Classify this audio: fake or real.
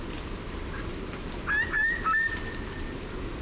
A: real